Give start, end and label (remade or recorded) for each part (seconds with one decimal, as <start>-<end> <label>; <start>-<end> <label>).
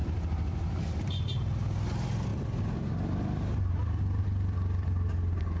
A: 0.0-5.6 recorded